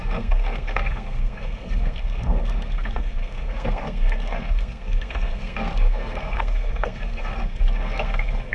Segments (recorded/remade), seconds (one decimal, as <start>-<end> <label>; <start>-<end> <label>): 0.0-8.5 remade